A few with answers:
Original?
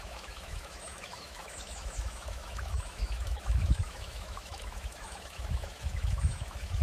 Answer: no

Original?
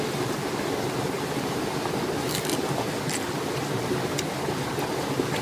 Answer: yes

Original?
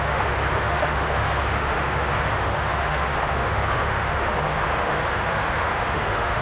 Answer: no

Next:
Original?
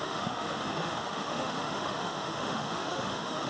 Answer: no